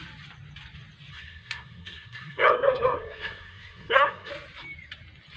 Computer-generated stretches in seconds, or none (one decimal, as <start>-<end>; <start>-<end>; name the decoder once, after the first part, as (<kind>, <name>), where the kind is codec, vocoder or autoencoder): 1.1-4.3 (codec, SNAC)